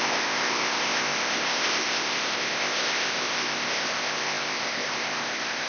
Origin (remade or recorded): remade